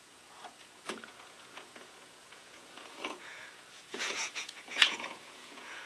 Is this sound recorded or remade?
remade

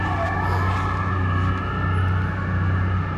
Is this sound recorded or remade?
recorded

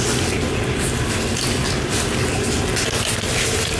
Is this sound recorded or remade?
recorded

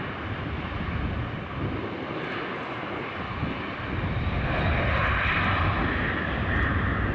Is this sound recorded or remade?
recorded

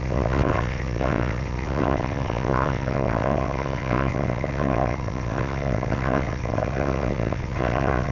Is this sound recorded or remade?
remade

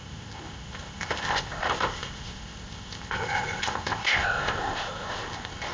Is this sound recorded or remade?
remade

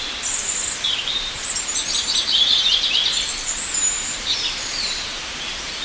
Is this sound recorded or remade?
remade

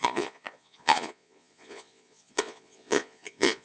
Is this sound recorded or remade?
remade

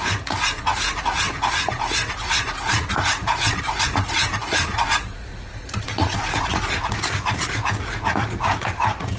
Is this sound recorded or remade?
remade